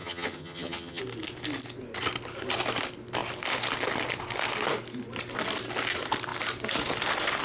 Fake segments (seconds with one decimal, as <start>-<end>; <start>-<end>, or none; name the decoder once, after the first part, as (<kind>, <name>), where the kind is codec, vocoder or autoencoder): 0.0-1.0 (vocoder, HiFi-GAN)